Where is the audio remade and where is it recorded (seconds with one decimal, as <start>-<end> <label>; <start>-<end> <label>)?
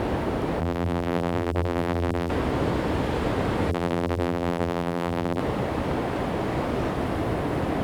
0.0-0.6 recorded; 0.6-2.3 remade; 2.3-3.7 recorded; 3.7-5.4 remade; 5.4-7.8 recorded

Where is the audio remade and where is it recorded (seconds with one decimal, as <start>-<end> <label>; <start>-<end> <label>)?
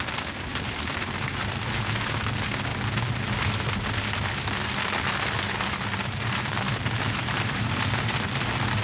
0.0-0.5 recorded; 0.5-1.5 remade; 1.5-6.0 recorded; 6.0-8.4 remade; 8.4-8.8 recorded